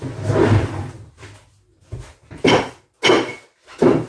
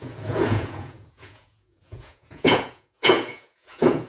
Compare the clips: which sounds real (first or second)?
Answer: first